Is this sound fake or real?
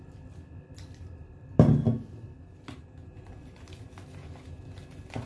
real